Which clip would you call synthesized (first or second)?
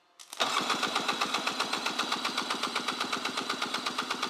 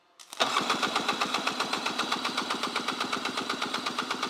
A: second